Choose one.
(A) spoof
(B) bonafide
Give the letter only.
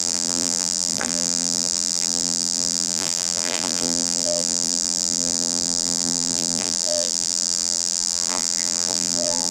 A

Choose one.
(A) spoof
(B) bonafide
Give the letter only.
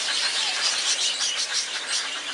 A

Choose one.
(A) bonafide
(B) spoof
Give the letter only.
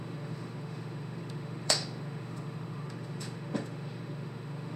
B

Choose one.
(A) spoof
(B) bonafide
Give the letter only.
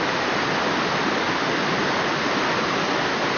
B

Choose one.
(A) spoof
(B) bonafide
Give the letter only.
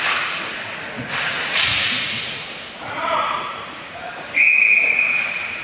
A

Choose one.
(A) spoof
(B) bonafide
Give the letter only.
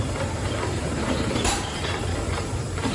A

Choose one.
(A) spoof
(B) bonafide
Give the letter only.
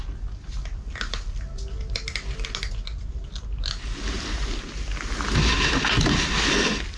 B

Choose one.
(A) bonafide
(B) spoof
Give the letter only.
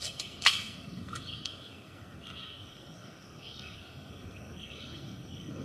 B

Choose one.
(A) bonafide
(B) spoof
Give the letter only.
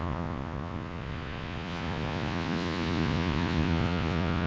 B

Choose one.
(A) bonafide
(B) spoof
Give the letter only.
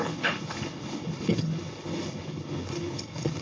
B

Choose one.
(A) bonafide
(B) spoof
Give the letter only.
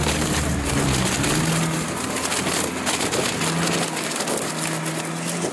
A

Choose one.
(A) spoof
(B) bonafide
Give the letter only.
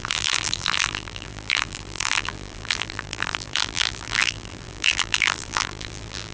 A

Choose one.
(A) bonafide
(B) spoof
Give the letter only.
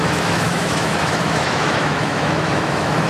B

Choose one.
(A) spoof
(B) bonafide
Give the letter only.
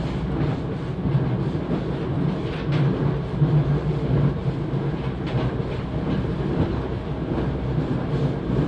B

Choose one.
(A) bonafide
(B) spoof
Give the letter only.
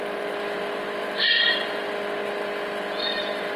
A